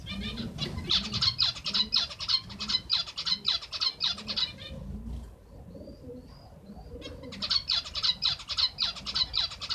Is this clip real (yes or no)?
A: yes